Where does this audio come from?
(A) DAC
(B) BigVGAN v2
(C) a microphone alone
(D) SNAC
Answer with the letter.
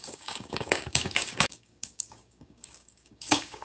A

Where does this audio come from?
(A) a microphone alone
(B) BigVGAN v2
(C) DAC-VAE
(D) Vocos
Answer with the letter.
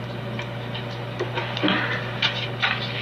A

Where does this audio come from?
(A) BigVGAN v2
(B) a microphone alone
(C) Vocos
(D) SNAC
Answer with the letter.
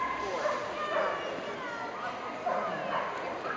B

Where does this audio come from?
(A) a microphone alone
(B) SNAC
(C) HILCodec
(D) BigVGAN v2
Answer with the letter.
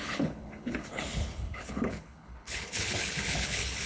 C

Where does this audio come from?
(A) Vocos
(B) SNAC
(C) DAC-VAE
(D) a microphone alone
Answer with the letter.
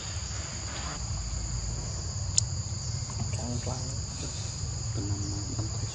D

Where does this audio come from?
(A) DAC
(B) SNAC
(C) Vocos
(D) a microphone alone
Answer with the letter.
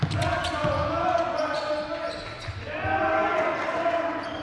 D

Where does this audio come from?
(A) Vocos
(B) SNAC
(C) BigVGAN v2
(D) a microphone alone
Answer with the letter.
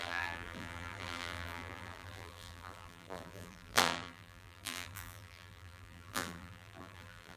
C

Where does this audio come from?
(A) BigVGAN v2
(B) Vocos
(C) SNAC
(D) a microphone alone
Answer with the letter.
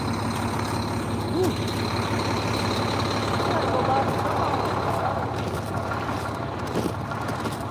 D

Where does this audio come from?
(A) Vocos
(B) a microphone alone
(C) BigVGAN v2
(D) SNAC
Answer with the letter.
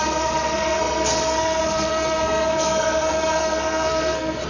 D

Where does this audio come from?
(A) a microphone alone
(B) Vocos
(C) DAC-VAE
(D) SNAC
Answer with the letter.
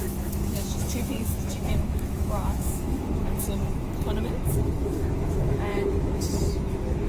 C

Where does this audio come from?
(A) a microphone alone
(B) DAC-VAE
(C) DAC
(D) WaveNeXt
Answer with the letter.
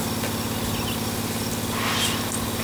A